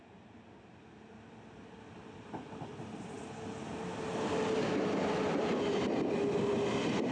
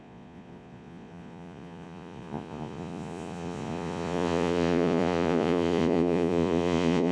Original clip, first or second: first